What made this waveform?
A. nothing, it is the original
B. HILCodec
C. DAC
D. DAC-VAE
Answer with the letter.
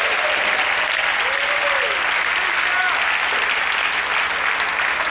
A